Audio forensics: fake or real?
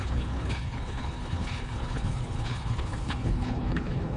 fake